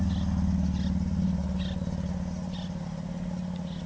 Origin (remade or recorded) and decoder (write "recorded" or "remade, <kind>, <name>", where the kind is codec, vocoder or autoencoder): recorded